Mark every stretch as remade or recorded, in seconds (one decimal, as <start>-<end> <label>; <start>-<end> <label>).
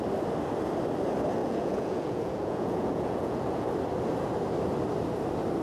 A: 0.0-1.4 recorded; 1.4-3.7 remade; 3.7-5.6 recorded